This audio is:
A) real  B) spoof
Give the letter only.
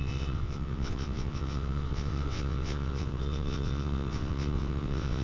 B